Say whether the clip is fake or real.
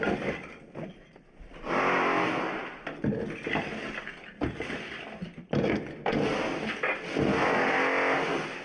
real